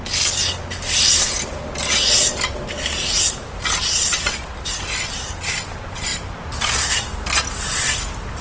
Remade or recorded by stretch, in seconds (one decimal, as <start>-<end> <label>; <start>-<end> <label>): 0.0-8.4 recorded